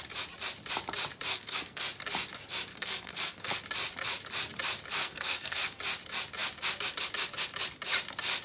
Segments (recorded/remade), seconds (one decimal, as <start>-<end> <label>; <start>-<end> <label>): 0.0-1.3 recorded; 1.3-1.8 remade; 1.8-2.7 recorded; 2.7-3.6 remade; 3.6-5.0 recorded; 5.0-5.8 remade; 5.8-8.4 recorded